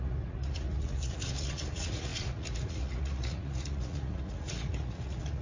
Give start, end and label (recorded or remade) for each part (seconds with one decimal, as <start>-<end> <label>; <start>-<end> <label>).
0.0-5.4 remade